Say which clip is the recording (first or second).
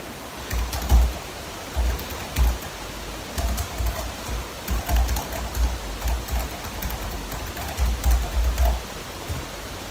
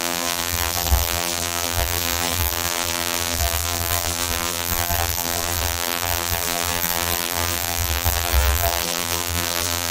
first